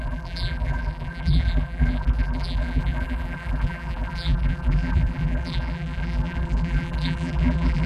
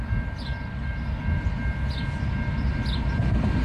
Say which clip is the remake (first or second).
first